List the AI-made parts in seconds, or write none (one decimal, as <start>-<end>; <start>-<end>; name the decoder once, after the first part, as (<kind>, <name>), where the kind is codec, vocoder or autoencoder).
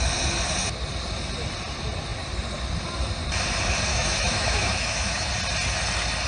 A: 3.9-5.3 (autoencoder, DAC-VAE)